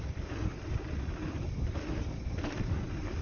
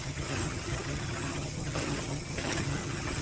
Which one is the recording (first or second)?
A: first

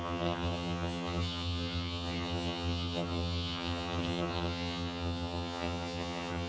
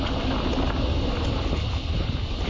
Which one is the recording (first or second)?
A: second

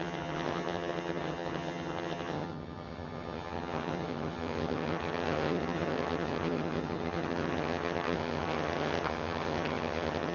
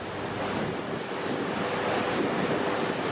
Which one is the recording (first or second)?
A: second